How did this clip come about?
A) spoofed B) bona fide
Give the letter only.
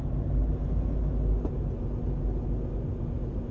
B